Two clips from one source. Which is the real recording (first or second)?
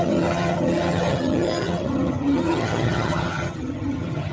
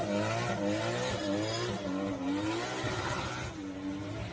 second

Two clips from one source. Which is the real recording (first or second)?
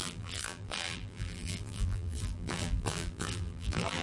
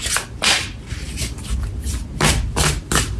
second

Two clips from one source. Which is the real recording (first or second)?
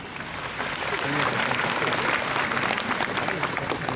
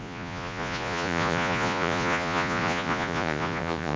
first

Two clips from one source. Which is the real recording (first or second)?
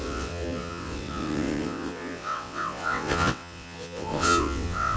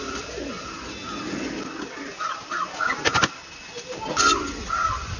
second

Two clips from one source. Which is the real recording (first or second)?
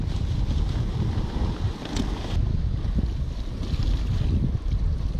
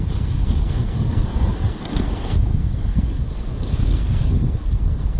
first